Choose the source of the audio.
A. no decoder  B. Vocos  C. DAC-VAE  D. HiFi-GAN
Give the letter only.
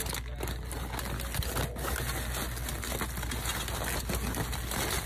A